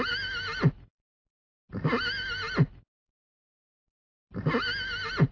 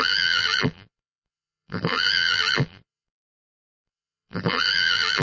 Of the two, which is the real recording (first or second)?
first